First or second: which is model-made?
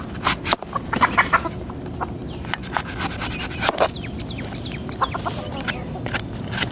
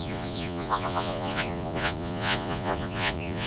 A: second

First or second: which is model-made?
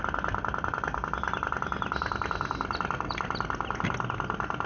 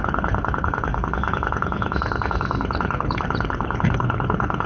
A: second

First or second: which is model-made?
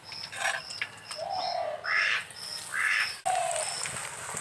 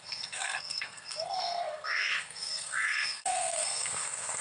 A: second